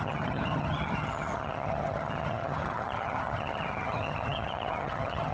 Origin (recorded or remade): remade